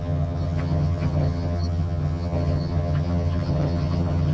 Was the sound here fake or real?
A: fake